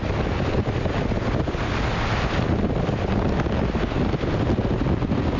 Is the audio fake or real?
real